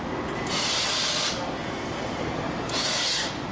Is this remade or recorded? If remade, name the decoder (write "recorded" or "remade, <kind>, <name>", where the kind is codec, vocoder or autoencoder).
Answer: recorded